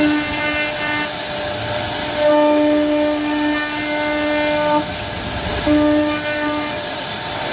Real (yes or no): yes